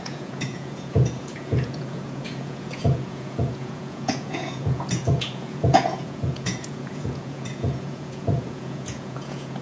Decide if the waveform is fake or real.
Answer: fake